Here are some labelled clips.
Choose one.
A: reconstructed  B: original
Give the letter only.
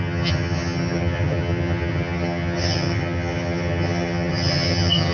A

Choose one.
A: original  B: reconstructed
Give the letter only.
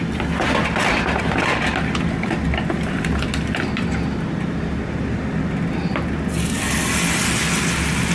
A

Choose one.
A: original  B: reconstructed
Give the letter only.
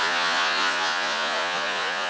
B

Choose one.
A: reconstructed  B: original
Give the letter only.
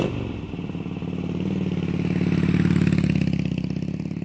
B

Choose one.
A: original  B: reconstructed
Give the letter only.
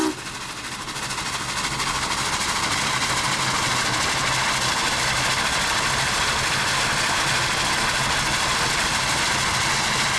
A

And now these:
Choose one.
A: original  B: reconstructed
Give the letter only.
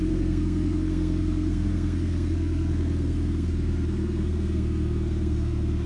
B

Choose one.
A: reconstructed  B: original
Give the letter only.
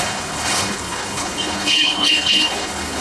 A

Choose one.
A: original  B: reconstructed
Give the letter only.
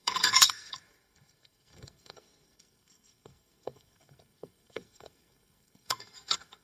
B